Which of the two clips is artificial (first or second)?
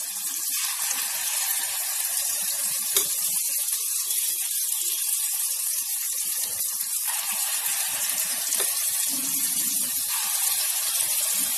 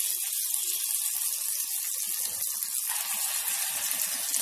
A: first